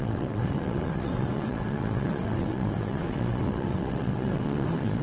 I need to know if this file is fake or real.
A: fake